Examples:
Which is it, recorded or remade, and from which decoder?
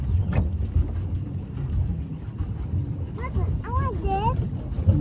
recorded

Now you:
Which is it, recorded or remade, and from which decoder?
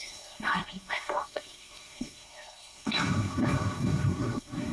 remade, codec, SNAC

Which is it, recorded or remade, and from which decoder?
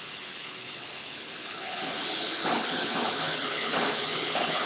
remade, codec, HILCodec